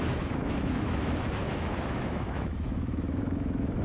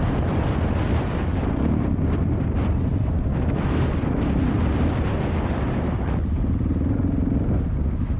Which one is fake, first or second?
first